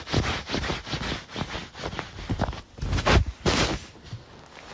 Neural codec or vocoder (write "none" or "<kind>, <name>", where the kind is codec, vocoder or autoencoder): none